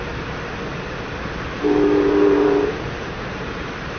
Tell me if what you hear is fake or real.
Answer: fake